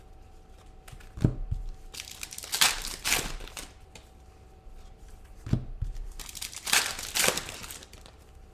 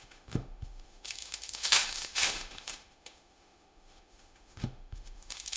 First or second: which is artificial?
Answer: second